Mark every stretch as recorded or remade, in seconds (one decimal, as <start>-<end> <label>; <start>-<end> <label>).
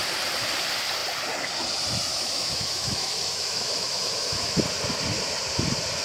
0.0-2.1 recorded; 2.1-4.6 remade; 4.6-6.0 recorded